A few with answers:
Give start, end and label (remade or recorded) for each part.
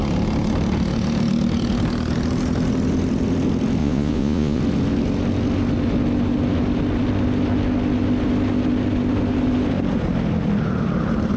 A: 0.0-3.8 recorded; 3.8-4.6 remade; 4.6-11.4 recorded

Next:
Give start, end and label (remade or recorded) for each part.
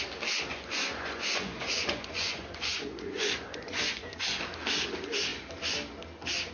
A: 0.0-0.5 recorded; 0.5-4.4 remade; 4.4-6.5 recorded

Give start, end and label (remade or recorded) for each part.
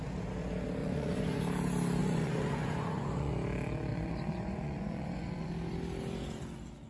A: 0.0-0.8 recorded; 0.8-1.4 remade; 1.4-2.0 recorded; 2.0-3.3 remade; 3.3-3.9 recorded; 3.9-5.5 remade; 5.5-6.9 recorded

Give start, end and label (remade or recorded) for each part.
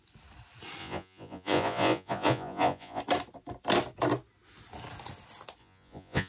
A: 0.0-0.8 recorded; 0.8-3.0 remade; 3.0-5.6 recorded; 5.6-6.3 remade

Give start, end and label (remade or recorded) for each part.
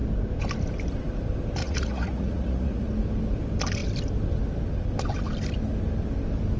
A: 0.0-1.6 recorded; 1.6-2.9 remade; 2.9-6.6 recorded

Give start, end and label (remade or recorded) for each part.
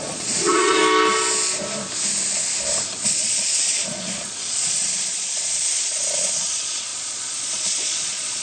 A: 0.0-0.8 remade; 0.8-3.0 recorded; 3.0-8.4 remade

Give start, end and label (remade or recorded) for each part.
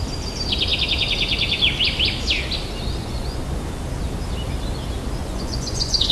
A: 0.0-3.0 recorded; 3.0-3.5 remade; 3.5-5.2 recorded; 5.2-6.1 remade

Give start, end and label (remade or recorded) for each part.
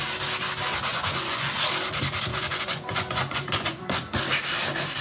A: 0.0-0.9 recorded; 0.9-1.5 remade; 1.5-2.3 recorded; 2.3-4.2 remade; 4.2-5.0 recorded